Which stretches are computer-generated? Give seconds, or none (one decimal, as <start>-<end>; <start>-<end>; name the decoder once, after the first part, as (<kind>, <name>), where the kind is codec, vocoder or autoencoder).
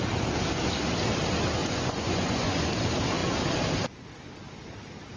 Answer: 1.6-2.7 (vocoder, Vocos)